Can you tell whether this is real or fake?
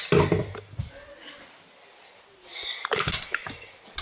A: real